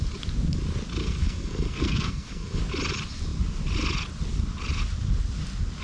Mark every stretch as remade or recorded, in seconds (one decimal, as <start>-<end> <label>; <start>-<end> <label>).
0.0-1.0 recorded; 1.0-2.6 remade; 2.6-5.8 recorded